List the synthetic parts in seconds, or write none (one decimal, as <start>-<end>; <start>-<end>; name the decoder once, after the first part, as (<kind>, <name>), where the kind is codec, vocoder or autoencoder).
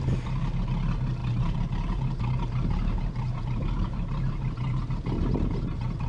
1.2-4.9 (vocoder, BigVGAN v2)